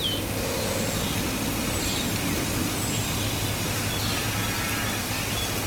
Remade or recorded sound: recorded